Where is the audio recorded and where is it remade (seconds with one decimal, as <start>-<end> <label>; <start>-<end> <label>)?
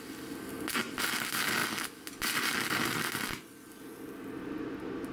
0.0-5.1 recorded